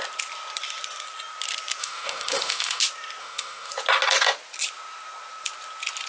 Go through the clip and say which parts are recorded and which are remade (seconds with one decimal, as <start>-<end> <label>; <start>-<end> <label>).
0.0-1.8 recorded; 1.8-2.8 remade; 2.8-3.2 recorded; 3.2-3.7 remade; 3.7-6.1 recorded